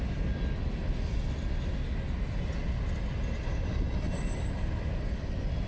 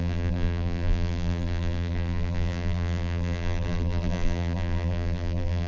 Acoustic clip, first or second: first